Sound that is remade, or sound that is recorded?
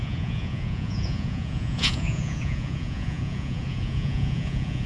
remade